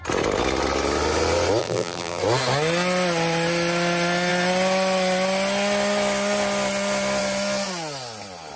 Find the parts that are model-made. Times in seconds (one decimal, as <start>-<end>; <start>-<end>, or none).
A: 1.6-2.2